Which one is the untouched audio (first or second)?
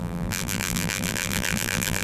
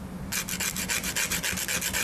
second